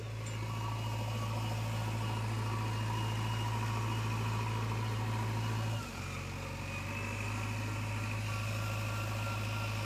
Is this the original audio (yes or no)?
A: yes